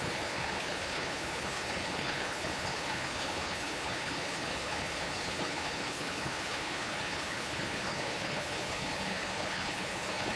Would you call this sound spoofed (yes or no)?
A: yes